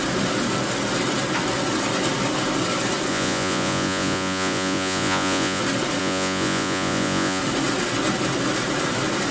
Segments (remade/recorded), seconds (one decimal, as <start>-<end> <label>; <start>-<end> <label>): 0.0-3.1 recorded; 3.1-5.6 remade; 5.6-6.0 recorded; 6.0-7.4 remade; 7.4-9.3 recorded